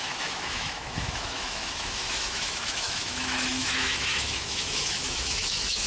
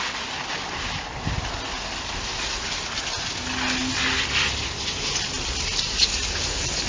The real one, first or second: second